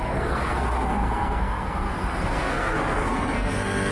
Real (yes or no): no